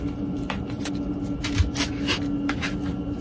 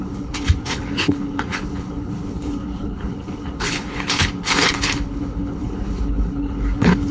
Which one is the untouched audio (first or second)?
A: first